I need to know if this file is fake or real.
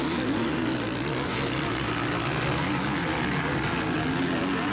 real